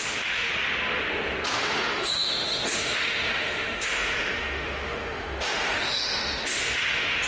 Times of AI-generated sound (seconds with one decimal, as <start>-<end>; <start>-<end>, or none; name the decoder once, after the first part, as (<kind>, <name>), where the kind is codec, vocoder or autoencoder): 0.0-0.5 (autoencoder, DAC-VAE); 1.5-7.3